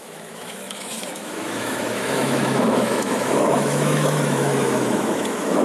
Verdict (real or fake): fake